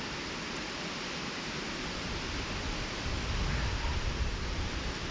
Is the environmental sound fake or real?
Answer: fake